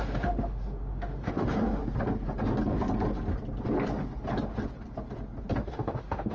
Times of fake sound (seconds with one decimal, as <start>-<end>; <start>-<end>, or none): 0.0-1.8; 5.6-6.3